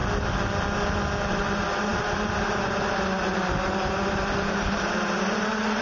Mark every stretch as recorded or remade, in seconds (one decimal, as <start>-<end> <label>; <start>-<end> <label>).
0.0-1.3 recorded; 1.3-5.8 remade